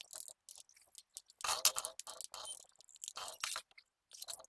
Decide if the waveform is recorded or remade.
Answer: recorded